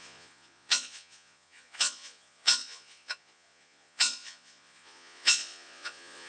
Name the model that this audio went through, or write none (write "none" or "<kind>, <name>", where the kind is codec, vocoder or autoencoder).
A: vocoder, Vocos